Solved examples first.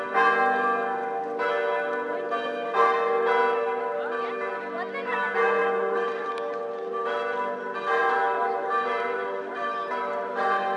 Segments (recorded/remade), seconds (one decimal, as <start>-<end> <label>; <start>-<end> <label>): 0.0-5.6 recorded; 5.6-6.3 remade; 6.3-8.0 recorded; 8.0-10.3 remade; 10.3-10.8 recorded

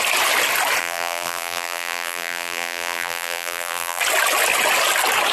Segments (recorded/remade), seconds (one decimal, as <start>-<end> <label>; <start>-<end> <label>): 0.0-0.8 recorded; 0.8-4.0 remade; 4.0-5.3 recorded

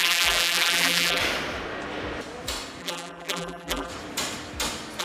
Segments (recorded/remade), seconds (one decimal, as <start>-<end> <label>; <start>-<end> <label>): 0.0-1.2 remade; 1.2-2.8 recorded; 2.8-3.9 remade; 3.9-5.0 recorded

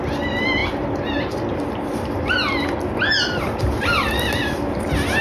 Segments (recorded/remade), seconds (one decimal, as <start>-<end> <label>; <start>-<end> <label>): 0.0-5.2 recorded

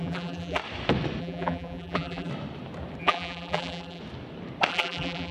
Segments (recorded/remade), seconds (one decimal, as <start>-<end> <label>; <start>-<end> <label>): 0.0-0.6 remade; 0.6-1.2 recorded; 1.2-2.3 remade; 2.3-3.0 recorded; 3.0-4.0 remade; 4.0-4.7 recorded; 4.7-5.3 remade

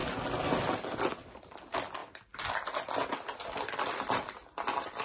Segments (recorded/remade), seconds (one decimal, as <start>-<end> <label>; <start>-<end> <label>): 0.0-0.6 recorded; 0.6-2.0 remade; 2.0-2.9 recorded; 2.9-5.0 remade

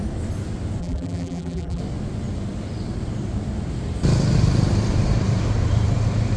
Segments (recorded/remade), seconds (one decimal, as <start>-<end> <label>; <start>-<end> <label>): 0.0-0.8 recorded; 0.8-1.8 remade; 1.8-6.4 recorded